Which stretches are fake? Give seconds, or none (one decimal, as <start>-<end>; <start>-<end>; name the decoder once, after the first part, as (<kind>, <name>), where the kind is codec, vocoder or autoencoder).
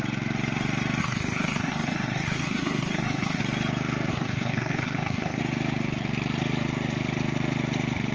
1.0-3.4 (codec, SNAC); 4.1-5.4